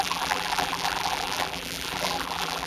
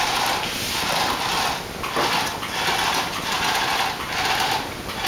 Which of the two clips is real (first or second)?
second